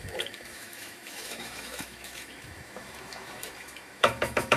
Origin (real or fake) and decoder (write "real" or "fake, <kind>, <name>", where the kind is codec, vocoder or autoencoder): fake, autoencoder, DAC-VAE